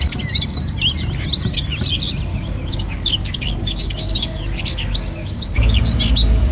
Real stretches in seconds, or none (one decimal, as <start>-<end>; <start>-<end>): 0.0-2.3; 5.8-6.5

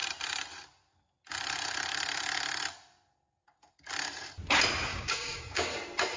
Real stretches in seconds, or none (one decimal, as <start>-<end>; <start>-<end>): 0.0-4.9; 5.7-6.2

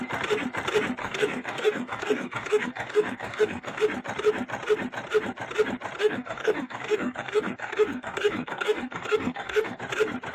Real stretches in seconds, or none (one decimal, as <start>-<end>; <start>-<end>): 0.0-1.0; 3.8-6.0; 9.8-10.3

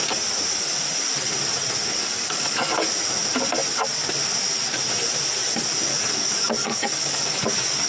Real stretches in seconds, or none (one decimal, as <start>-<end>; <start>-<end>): 0.0-2.0; 2.7-6.1